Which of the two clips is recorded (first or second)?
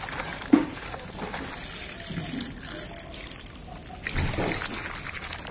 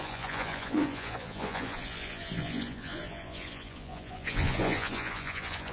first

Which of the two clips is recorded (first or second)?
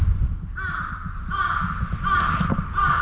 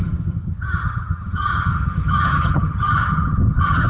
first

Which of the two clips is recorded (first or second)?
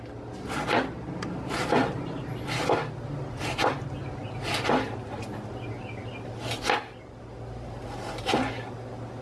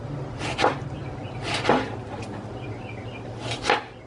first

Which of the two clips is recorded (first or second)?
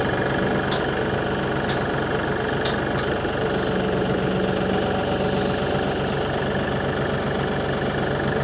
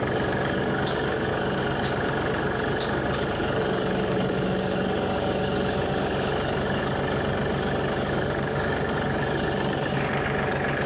first